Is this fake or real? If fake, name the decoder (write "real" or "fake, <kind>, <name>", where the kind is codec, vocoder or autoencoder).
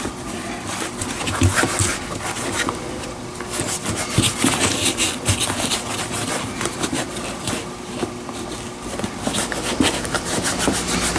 real